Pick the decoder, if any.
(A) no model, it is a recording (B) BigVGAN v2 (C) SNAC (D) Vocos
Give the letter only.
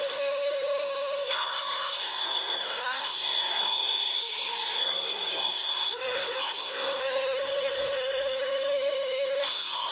C